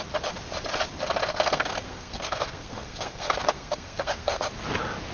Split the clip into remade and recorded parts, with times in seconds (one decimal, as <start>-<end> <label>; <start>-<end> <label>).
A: 0.0-1.3 recorded; 1.3-4.4 remade; 4.4-5.1 recorded